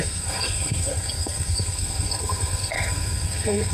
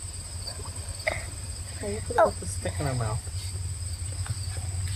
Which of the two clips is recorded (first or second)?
second